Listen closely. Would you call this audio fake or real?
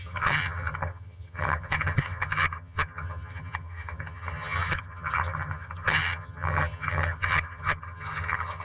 fake